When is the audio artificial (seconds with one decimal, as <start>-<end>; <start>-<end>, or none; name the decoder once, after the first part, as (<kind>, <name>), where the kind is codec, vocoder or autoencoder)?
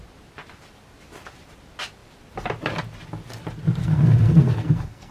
3.8-5.1 (codec, SNAC)